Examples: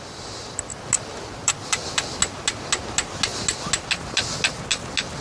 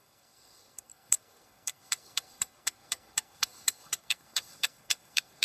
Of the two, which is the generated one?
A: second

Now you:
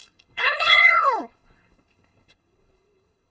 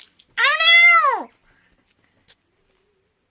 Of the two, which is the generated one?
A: first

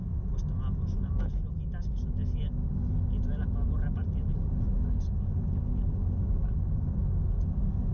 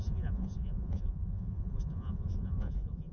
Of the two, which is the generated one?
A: second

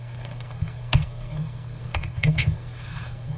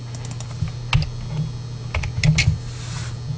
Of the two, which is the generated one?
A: first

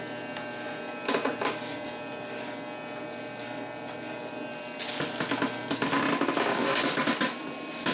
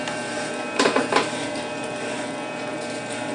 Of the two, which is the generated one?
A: second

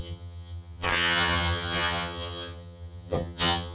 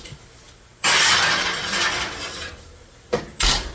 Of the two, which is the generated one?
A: first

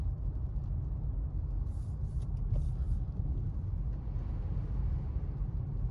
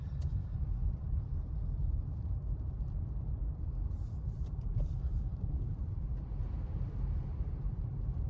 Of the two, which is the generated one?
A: second